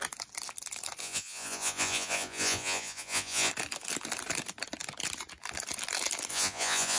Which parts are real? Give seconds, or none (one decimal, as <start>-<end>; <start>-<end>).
0.0-1.0; 3.5-6.3

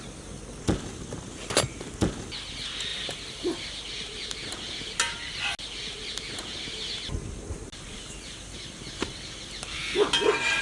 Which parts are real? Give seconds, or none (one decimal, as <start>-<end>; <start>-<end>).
0.0-10.6

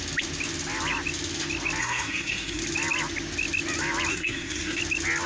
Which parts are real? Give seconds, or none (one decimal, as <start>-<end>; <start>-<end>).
0.0-1.8; 2.6-4.1; 4.8-5.3

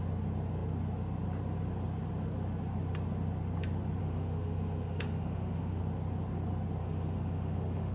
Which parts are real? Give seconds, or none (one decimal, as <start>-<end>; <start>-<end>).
0.0-4.0; 5.8-6.8

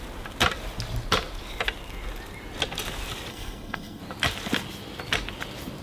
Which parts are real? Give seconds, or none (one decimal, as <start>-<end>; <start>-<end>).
0.0-3.3; 4.0-5.8

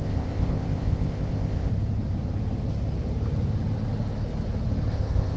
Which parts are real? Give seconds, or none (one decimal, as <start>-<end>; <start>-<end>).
1.7-4.9